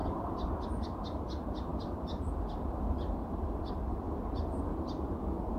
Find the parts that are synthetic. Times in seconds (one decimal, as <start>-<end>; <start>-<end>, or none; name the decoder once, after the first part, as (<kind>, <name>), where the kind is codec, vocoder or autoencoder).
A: 0.0-0.5 (vocoder, BigVGAN v2); 1.7-5.1